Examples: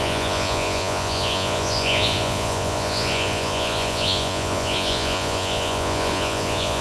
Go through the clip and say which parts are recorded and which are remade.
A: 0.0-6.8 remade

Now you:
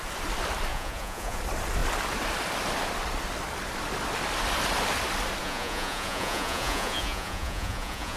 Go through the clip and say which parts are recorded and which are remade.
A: 0.0-0.7 recorded; 0.7-1.4 remade; 1.4-5.4 recorded; 5.4-8.2 remade

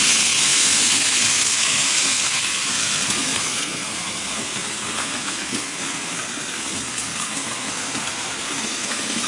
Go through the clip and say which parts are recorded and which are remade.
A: 0.0-9.3 remade

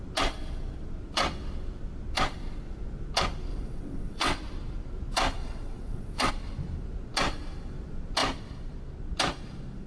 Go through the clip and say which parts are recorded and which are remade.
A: 0.0-3.5 recorded; 3.5-4.4 remade; 4.4-5.4 recorded; 5.4-6.3 remade; 6.3-9.9 recorded

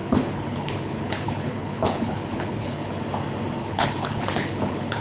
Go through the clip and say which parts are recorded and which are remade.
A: 0.0-3.0 remade; 3.0-3.6 recorded; 3.6-5.0 remade

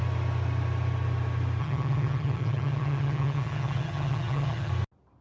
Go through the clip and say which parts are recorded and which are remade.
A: 0.0-1.6 recorded; 1.6-4.7 remade; 4.7-5.2 recorded

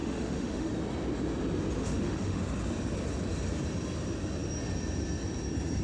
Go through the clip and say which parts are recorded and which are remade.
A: 0.0-0.7 remade; 0.7-1.8 recorded; 1.8-2.4 remade; 2.4-5.8 recorded